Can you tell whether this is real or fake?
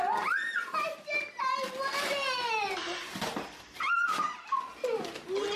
real